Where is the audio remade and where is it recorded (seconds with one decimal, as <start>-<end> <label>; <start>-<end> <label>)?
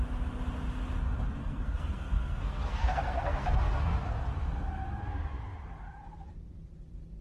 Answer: 0.0-1.4 recorded; 1.4-4.1 remade; 4.1-7.2 recorded